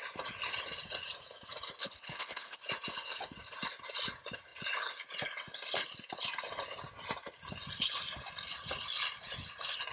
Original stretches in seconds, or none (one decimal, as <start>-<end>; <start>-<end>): 0.0-1.8; 2.6-9.9